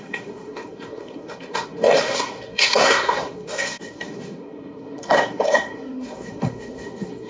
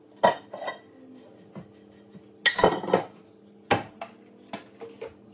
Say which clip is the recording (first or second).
second